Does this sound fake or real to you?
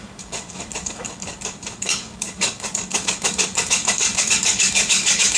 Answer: fake